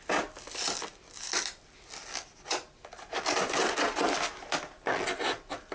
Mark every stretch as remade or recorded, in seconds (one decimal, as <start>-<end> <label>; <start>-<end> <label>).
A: 0.0-5.7 recorded